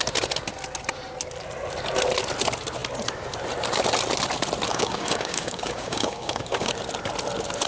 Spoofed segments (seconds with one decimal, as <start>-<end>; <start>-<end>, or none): 4.7-6.7